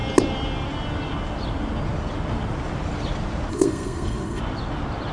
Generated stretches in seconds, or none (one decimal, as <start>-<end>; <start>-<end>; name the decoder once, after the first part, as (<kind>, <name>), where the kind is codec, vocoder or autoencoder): 3.5-4.4 (codec, SNAC)